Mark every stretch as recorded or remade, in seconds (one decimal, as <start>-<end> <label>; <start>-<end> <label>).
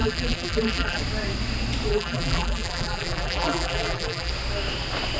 0.0-1.0 remade; 1.0-1.9 recorded; 1.9-4.3 remade; 4.3-5.2 recorded